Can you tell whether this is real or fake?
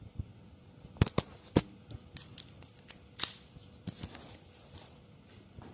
real